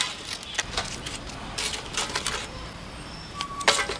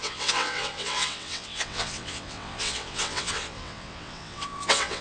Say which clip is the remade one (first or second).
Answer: second